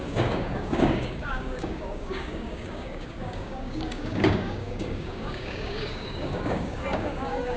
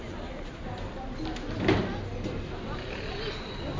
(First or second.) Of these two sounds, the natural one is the second